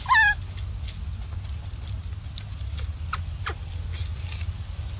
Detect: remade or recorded recorded